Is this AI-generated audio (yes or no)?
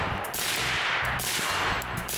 no